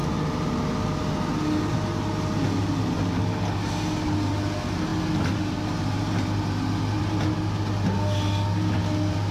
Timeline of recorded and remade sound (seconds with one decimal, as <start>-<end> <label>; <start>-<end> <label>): 0.0-9.3 recorded